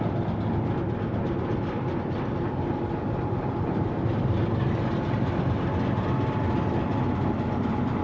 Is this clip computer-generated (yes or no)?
no